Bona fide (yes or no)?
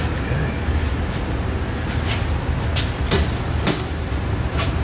yes